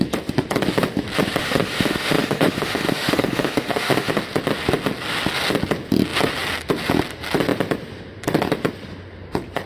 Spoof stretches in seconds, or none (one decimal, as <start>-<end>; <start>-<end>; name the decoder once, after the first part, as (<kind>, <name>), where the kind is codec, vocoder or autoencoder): 1.4-4.1 (autoencoder, DAC-VAE)